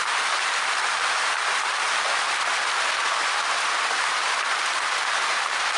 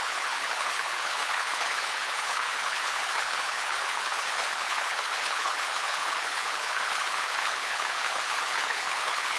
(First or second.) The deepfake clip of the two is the second